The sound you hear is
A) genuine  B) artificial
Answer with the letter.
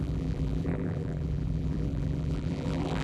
B